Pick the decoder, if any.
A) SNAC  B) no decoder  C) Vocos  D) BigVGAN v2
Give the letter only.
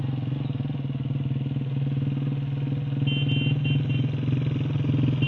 B